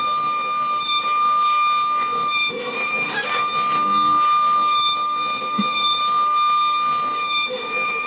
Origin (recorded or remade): remade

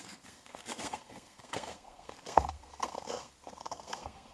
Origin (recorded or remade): remade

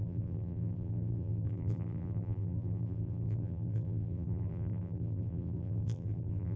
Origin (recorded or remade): remade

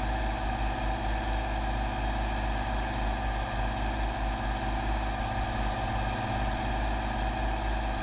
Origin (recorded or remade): recorded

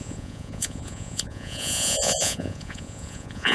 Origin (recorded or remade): remade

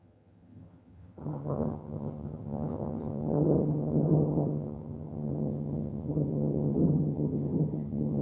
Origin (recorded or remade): remade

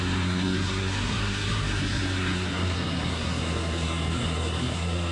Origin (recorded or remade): remade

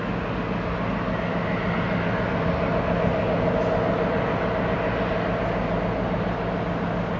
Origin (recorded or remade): recorded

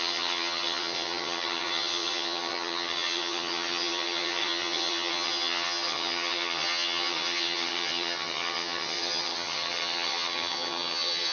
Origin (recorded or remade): remade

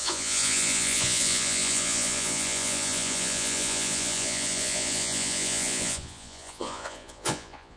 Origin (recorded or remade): remade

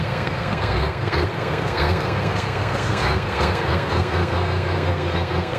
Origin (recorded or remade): remade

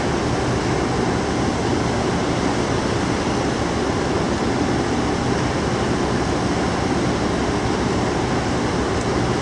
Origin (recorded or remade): recorded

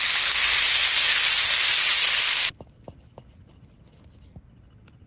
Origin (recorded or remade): recorded